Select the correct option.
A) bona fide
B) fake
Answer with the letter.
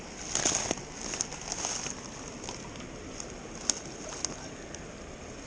A